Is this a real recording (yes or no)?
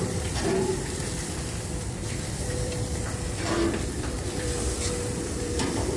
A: no